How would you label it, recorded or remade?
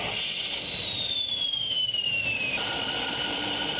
remade